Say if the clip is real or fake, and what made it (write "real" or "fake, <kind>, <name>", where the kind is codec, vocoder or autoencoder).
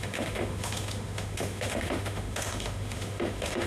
fake, autoencoder, DAC-VAE